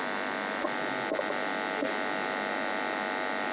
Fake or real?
real